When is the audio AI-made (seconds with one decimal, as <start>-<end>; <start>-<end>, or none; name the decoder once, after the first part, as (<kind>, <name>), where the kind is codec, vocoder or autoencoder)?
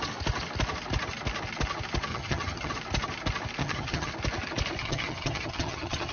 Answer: 2.1-2.7 (vocoder, HiFi-GAN); 3.6-4.1; 4.8-6.1